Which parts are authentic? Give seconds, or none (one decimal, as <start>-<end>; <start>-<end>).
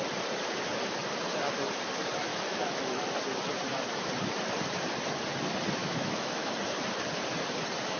0.0-2.3; 3.1-5.8; 6.5-8.0